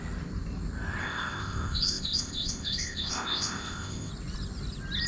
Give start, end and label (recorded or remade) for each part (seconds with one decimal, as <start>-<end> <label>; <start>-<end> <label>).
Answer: 0.0-1.0 recorded; 1.0-4.1 remade; 4.1-5.1 recorded

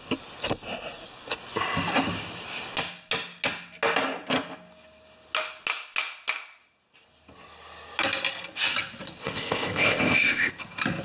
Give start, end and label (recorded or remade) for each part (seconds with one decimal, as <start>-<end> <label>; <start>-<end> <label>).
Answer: 0.0-9.2 recorded; 9.2-10.5 remade; 10.5-11.0 recorded

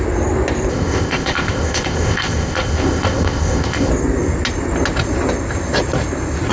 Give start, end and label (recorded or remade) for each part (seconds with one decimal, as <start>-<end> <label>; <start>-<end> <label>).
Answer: 0.0-0.7 recorded; 0.7-3.9 remade; 3.9-6.5 recorded

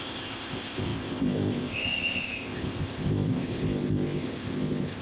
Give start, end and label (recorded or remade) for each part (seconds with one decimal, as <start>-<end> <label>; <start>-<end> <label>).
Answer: 0.0-5.0 remade

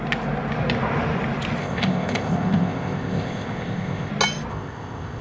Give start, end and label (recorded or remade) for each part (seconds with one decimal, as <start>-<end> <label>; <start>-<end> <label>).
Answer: 0.0-1.6 recorded; 1.6-4.1 remade; 4.1-4.5 recorded; 4.5-5.2 remade

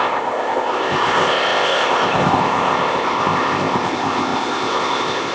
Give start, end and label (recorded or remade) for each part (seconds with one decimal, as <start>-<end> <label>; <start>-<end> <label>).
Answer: 0.0-5.3 remade

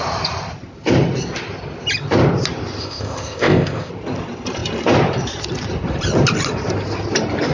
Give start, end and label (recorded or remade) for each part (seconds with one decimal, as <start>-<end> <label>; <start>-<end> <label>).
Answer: 0.0-2.8 recorded; 2.8-3.9 remade; 3.9-7.5 recorded

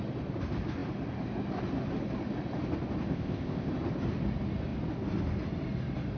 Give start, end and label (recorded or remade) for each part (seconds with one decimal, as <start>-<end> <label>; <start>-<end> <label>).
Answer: 0.0-3.1 recorded; 3.1-3.7 remade; 3.7-6.2 recorded